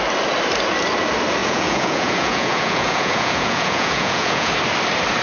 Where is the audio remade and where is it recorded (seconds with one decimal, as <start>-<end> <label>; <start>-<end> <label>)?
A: 0.0-1.4 recorded; 1.4-4.5 remade; 4.5-5.2 recorded